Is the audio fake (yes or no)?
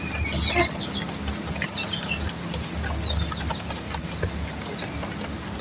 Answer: no